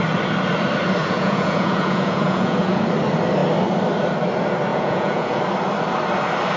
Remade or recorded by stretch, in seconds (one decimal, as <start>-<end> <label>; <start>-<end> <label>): 0.0-1.0 recorded; 1.0-2.8 remade; 2.8-4.7 recorded; 4.7-5.4 remade; 5.4-6.6 recorded